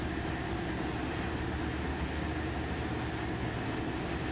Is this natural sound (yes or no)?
yes